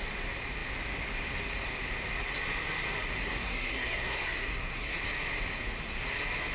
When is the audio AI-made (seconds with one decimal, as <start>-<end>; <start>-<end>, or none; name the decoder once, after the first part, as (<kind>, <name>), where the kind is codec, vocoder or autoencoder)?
3.2-5.0 (codec, SNAC)